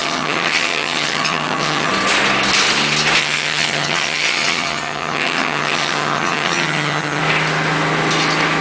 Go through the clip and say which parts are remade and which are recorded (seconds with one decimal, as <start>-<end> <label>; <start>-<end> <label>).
0.0-1.9 remade; 1.9-3.2 recorded; 3.2-7.2 remade; 7.2-8.6 recorded